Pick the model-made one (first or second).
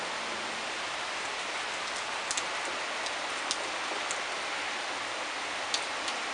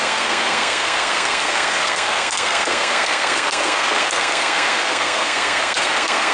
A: second